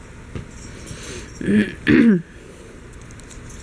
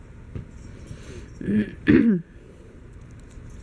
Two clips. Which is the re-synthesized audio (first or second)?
second